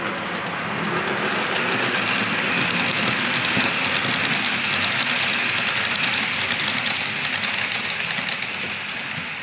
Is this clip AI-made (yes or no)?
no